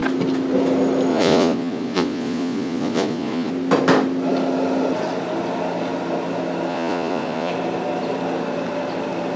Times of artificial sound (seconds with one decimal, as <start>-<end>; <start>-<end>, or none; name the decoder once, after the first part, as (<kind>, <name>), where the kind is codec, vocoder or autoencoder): 1.1-3.5 (vocoder, Vocos); 6.7-7.5